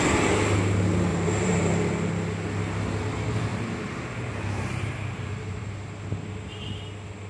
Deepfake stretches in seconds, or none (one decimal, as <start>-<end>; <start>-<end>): 1.1-2.1; 3.5-5.7